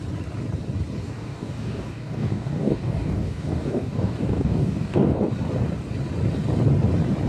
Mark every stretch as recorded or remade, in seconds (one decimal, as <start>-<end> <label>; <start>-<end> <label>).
0.0-1.0 recorded; 1.0-5.2 remade; 5.2-7.3 recorded